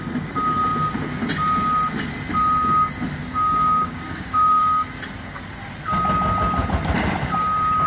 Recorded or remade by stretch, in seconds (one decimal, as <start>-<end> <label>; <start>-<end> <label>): 0.0-3.2 recorded; 3.2-4.6 remade; 4.6-7.9 recorded